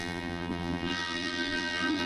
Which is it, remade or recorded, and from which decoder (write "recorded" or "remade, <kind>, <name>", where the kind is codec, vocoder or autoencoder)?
remade, vocoder, BigVGAN v2